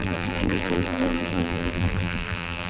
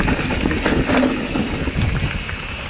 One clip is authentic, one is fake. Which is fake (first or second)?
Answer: first